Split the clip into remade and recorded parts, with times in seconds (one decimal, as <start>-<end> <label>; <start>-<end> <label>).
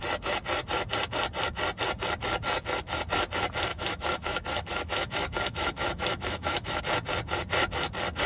0.0-3.7 recorded; 3.7-6.8 remade; 6.8-8.3 recorded